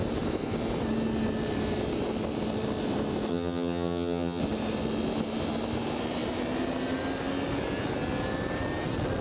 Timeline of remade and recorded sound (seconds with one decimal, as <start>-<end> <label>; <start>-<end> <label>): 0.0-3.3 recorded; 3.3-4.4 remade; 4.4-9.2 recorded